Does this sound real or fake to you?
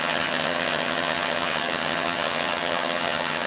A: fake